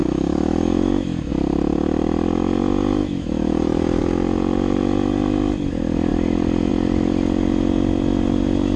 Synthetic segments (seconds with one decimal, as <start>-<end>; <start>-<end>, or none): 0.0-1.3; 3.0-4.0